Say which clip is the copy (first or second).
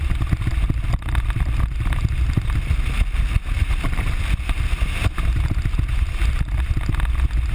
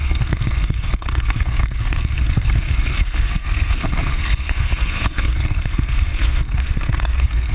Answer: second